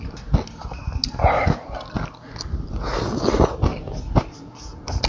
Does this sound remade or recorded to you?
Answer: recorded